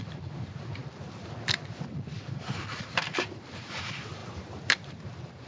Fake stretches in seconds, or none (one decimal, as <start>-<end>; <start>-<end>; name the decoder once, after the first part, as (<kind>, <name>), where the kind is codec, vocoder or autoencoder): 0.0-0.8 (vocoder, BigVGAN v2); 1.7-5.5

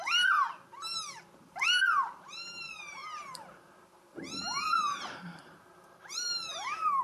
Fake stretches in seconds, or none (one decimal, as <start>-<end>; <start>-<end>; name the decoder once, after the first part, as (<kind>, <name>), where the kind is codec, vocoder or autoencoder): 3.0-3.7 (vocoder, BigVGAN v2); 4.9-5.6